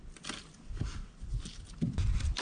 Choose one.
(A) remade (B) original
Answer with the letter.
B